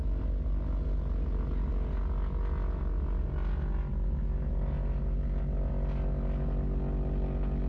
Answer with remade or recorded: recorded